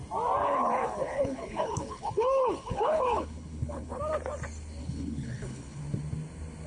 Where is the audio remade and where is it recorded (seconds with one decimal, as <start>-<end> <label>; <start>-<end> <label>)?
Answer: 0.0-0.4 recorded; 0.4-4.0 remade; 4.0-4.8 recorded; 4.8-5.8 remade; 5.8-6.7 recorded